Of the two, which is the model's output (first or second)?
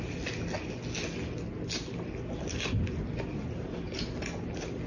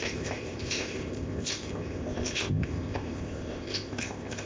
second